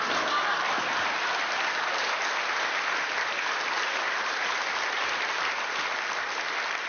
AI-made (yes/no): no